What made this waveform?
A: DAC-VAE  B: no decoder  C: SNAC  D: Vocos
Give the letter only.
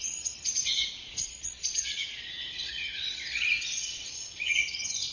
D